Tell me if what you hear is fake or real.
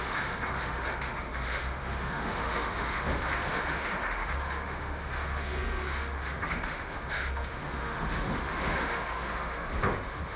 fake